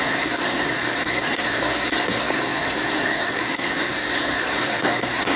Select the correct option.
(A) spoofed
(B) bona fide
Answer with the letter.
A